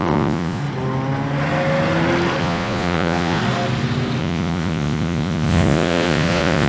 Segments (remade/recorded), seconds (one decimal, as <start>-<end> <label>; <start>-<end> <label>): 0.0-0.6 remade; 0.6-2.4 recorded; 2.4-3.4 remade; 3.4-4.2 recorded; 4.2-6.7 remade